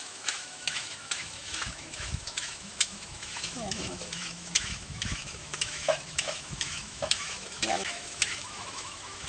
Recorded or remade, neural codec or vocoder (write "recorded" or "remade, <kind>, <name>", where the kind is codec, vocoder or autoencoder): remade, autoencoder, DAC-VAE